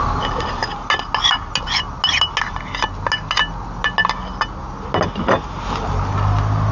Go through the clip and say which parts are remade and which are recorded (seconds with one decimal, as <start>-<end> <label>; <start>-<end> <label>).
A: 0.0-6.7 recorded